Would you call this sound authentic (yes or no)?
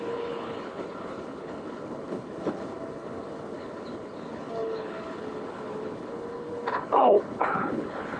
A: no